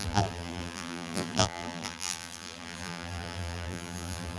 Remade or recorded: remade